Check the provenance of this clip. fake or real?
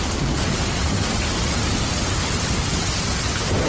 real